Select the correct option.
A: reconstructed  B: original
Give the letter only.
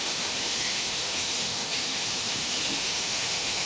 A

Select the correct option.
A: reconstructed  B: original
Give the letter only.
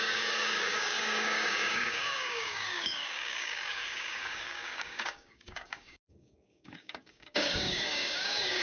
A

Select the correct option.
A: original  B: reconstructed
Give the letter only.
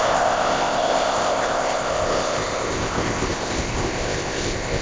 B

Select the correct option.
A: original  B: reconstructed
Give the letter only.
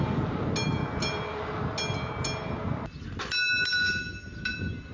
A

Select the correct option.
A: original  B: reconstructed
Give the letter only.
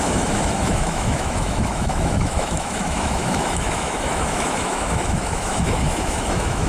B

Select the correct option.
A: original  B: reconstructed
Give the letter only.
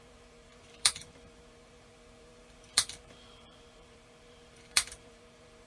B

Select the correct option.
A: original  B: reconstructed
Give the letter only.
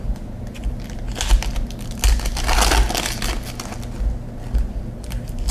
A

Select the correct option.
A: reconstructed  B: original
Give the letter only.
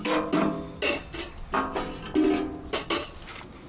B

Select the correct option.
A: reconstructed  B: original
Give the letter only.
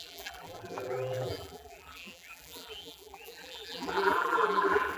A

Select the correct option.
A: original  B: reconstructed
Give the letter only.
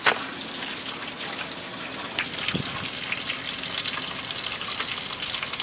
A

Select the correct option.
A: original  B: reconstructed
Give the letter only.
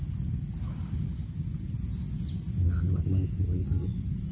A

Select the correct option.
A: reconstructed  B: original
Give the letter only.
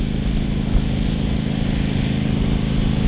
B